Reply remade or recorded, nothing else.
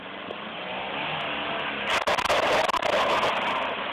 recorded